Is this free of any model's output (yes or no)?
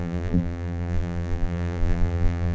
no